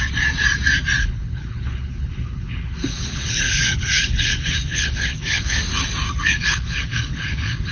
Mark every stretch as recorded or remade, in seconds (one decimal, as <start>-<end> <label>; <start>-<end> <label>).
0.0-1.0 recorded; 1.0-5.6 remade; 5.6-6.2 recorded; 6.2-7.7 remade